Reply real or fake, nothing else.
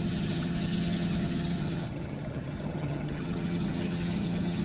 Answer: fake